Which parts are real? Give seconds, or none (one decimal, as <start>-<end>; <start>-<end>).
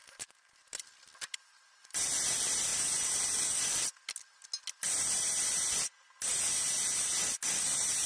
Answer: 0.0-8.1